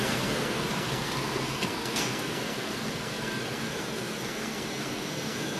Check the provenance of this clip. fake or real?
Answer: fake